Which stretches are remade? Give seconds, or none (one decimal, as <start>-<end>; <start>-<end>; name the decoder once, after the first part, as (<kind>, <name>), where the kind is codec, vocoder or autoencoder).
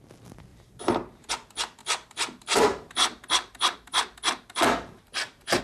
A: 0.5-1.3 (vocoder, BigVGAN v2); 1.8-5.6